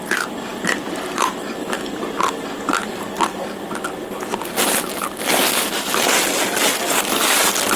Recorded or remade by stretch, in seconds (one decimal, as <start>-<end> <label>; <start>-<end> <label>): 0.0-7.8 recorded